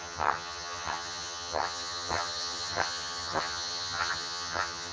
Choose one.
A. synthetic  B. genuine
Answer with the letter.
A